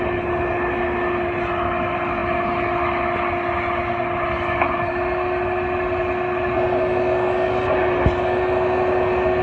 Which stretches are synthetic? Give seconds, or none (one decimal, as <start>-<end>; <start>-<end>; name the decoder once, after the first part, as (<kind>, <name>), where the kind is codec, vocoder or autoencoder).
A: none